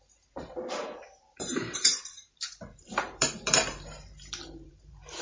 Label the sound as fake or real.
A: fake